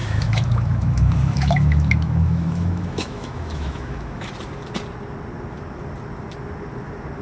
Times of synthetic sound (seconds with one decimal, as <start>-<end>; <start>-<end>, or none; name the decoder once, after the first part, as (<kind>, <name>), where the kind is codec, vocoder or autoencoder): 0.0-4.3 (autoencoder, DAC-VAE)